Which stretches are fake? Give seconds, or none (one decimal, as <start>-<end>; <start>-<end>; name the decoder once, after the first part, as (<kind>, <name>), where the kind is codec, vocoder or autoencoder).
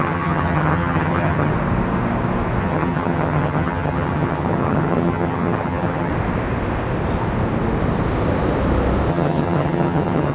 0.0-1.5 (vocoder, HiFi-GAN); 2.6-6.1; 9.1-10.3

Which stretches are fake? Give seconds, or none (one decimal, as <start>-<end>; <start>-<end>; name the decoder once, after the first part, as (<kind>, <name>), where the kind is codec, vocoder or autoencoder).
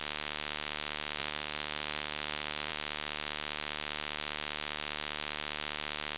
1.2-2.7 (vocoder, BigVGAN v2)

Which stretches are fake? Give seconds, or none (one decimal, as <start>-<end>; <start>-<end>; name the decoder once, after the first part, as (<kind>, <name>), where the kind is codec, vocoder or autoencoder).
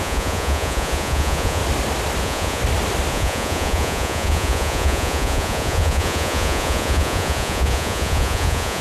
0.0-1.6 (vocoder, Vocos); 2.2-2.6; 3.1-8.8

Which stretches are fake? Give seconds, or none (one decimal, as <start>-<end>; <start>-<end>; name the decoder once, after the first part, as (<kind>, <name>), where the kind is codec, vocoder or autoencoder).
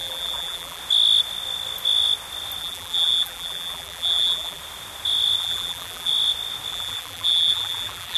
0.0-0.8 (vocoder, BigVGAN v2); 2.6-4.6; 5.4-6.1; 6.7-8.2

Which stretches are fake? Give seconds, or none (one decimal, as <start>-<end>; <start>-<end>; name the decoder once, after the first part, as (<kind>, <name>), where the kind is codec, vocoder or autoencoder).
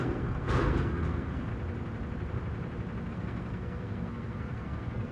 0.0-1.5 (codec, SNAC); 3.1-5.1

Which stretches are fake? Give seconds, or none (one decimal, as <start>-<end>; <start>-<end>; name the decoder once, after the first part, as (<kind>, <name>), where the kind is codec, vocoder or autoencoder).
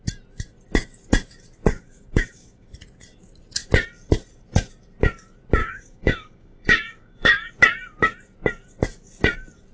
1.7-2.7 (codec, DAC); 5.6-7.5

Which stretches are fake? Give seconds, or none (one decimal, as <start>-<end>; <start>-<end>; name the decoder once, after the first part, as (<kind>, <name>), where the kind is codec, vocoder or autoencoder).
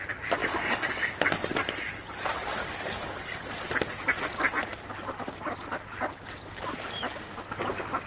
0.4-1.4 (codec, DAC); 2.6-3.5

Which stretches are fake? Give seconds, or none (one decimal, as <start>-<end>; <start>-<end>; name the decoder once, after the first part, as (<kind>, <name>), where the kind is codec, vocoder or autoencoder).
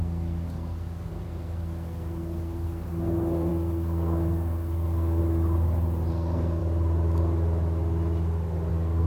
0.0-5.2 (codec, SNAC); 6.1-6.6; 8.7-9.1